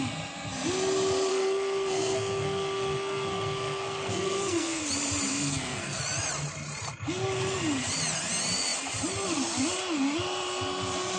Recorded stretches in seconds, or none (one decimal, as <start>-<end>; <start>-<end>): 0.0-1.3; 4.8-5.3; 6.0-11.2